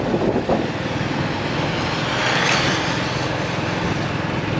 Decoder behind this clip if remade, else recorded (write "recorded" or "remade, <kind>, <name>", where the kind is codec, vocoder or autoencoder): recorded